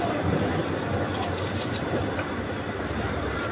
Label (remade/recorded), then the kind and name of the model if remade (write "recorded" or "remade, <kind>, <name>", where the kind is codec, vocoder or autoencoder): remade, vocoder, BigVGAN v2